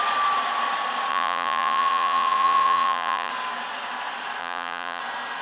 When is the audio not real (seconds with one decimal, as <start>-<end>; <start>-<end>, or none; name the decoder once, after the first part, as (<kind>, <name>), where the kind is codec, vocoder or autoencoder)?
1.1-3.3 (vocoder, Vocos); 4.4-5.0